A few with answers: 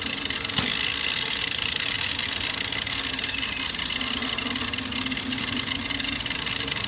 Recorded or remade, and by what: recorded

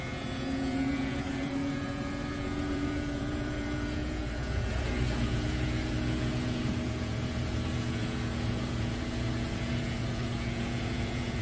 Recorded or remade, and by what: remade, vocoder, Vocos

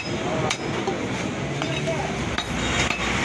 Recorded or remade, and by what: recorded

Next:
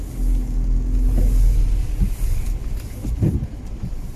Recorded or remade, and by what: recorded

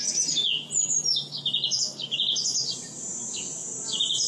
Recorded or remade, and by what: recorded